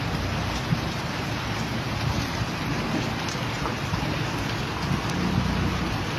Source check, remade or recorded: recorded